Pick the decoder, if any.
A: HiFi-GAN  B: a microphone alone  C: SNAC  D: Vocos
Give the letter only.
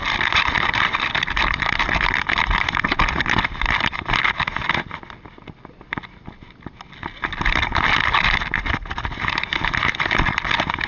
B